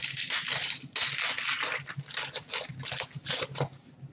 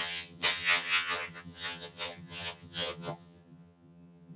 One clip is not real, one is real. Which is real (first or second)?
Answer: first